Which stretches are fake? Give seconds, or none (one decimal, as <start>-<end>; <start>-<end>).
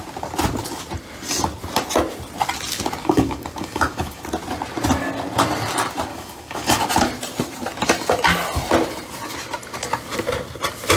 3.0-4.2; 6.1-6.8